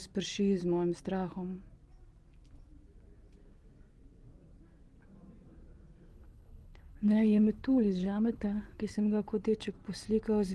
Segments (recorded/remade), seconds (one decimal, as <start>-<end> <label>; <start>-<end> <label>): 0.0-6.1 recorded; 6.1-9.4 remade; 9.4-10.5 recorded